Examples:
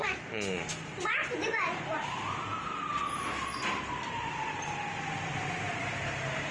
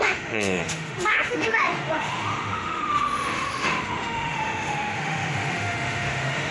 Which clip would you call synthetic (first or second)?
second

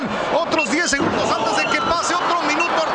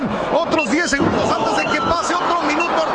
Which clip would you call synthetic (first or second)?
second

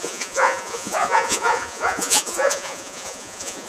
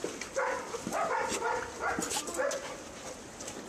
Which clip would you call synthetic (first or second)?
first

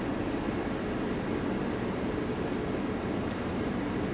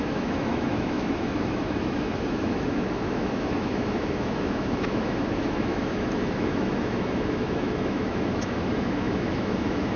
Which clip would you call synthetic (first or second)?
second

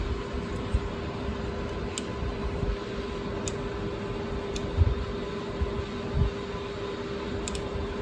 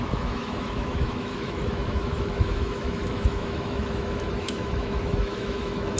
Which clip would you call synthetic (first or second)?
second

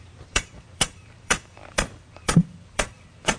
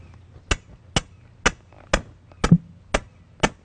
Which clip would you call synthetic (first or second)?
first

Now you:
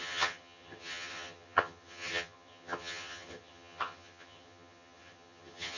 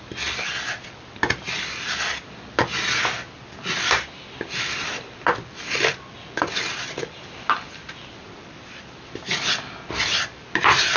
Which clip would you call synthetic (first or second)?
first